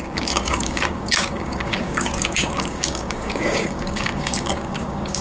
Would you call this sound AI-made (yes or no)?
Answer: yes